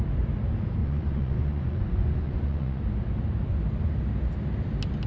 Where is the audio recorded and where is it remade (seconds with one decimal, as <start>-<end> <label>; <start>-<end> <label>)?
0.0-0.8 recorded; 0.8-2.8 remade; 2.8-5.1 recorded